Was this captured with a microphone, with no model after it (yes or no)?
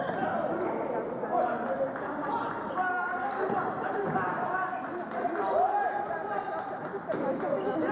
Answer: yes